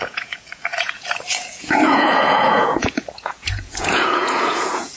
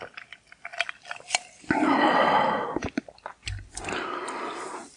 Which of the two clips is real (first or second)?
second